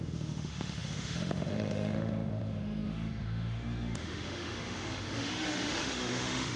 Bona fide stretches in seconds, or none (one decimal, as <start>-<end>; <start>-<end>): none